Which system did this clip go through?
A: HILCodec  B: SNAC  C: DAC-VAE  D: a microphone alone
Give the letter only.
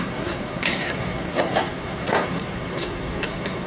B